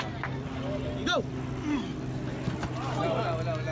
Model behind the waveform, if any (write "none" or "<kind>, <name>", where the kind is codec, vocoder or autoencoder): none